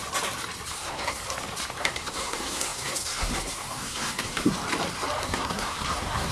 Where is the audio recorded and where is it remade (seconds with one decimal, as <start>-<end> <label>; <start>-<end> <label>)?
0.0-0.7 recorded; 0.7-1.2 remade; 1.2-1.8 recorded; 1.8-4.6 remade; 4.6-5.2 recorded; 5.2-6.3 remade